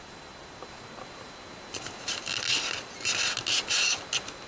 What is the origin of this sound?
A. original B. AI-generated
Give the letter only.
A